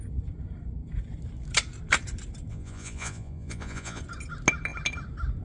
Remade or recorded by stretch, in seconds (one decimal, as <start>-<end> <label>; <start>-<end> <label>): 0.0-2.5 recorded; 2.5-4.0 remade; 4.0-5.4 recorded